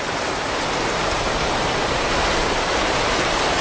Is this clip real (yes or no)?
no